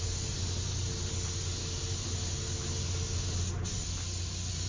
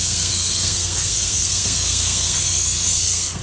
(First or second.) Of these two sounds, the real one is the first